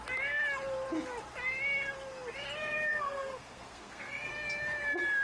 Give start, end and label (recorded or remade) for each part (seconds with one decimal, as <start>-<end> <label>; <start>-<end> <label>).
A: 0.0-2.6 recorded; 2.6-4.3 remade; 4.3-5.2 recorded